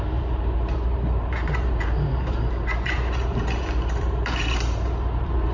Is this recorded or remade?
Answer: remade